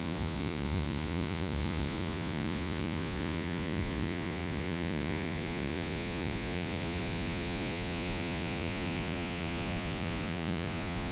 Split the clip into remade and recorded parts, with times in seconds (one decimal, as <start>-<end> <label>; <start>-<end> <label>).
0.0-11.1 remade